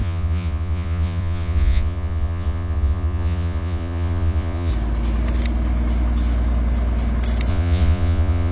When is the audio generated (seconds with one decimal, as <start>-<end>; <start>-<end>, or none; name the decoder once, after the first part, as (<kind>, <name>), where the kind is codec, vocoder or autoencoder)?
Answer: 0.0-4.7 (vocoder, Vocos); 7.5-8.5

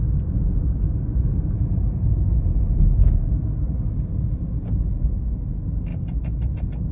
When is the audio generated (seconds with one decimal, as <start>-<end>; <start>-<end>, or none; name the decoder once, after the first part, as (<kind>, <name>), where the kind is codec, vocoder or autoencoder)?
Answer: none

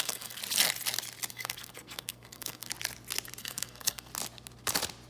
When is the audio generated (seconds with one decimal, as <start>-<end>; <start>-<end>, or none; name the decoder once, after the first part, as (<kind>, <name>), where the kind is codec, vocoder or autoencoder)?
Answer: 0.0-0.4 (codec, SNAC); 1.3-2.7; 3.4-4.1

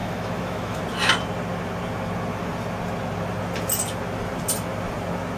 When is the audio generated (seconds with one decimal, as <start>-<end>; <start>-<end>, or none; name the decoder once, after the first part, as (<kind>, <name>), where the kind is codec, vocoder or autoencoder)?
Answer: 0.0-0.8 (autoencoder, DAC-VAE)

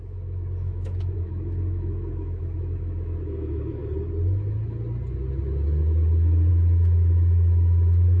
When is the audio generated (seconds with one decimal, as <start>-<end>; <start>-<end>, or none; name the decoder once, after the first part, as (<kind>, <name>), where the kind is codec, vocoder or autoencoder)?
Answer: 0.0-3.8 (autoencoder, DAC-VAE); 6.5-8.2

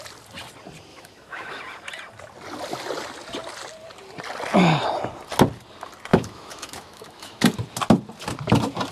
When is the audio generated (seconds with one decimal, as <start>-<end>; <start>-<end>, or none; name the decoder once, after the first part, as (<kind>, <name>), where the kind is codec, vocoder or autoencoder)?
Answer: 0.9-1.6 (autoencoder, DAC-VAE); 6.1-7.4